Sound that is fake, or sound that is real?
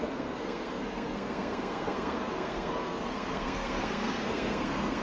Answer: fake